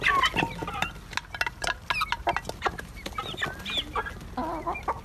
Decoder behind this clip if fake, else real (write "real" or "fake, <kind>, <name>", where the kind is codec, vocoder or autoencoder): real